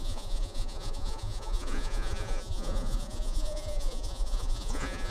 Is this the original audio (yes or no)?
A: no